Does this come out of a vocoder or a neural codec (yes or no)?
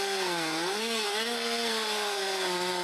yes